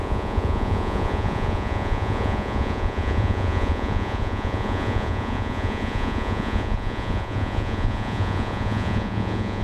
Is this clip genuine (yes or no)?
no